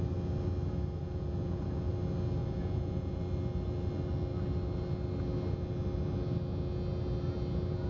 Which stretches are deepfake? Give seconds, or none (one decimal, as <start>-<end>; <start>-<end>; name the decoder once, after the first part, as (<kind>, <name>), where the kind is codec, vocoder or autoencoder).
1.0-1.9 (vocoder, Vocos); 2.4-3.2